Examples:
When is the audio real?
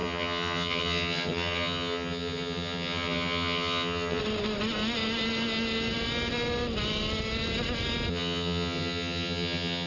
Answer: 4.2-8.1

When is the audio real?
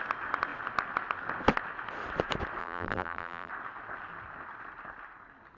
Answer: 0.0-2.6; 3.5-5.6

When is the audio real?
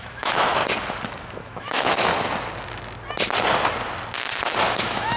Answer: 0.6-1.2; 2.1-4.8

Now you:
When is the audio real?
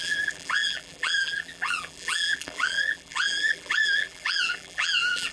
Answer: none